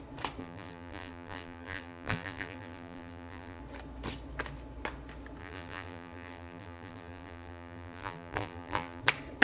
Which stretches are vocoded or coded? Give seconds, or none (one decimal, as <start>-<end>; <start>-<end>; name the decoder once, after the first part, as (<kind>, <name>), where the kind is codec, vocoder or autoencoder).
0.4-3.6 (vocoder, BigVGAN v2); 5.4-9.0